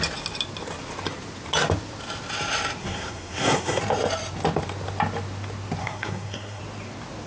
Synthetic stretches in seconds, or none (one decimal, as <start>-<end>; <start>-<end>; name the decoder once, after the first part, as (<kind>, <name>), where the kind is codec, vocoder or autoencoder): 2.8-3.8 (codec, SNAC); 5.8-6.6